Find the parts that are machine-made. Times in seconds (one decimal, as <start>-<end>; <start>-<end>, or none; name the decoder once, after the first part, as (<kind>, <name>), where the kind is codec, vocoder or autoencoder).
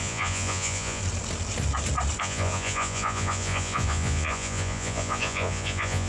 0.0-1.0 (vocoder, Vocos); 2.2-6.1